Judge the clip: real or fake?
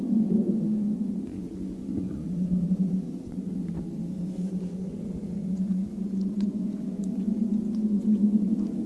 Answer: fake